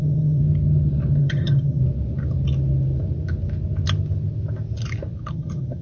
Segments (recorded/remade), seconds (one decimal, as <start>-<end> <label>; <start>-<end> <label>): 0.0-0.4 remade; 0.4-1.2 recorded; 1.2-1.8 remade; 1.8-5.3 recorded; 5.3-5.8 remade